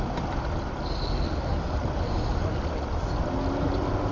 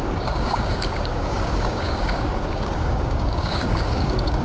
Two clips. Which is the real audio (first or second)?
first